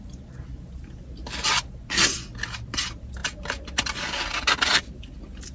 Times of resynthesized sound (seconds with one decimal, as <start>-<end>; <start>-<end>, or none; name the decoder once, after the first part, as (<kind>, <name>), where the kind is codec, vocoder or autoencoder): none